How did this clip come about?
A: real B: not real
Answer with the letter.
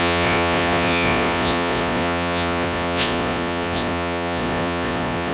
B